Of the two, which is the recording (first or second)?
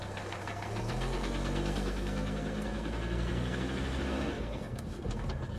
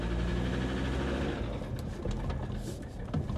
second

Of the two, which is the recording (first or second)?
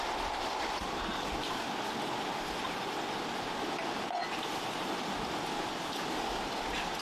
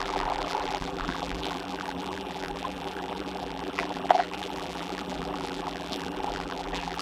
first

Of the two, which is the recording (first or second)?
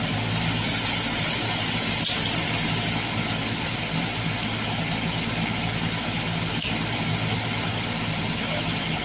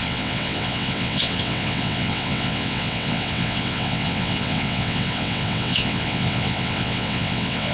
first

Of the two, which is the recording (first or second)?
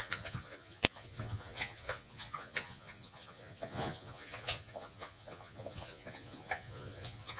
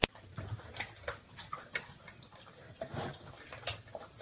second